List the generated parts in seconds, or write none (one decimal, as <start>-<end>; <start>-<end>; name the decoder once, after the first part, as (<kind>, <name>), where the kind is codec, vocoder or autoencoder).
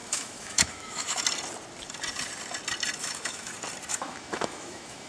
0.0-1.2 (autoencoder, DAC-VAE); 3.0-3.5; 3.9-5.1